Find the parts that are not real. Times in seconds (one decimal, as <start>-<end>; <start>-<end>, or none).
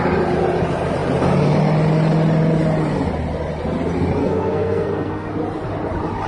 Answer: 4.2-5.3